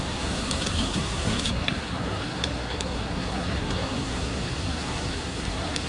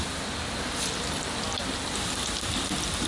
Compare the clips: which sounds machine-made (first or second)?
first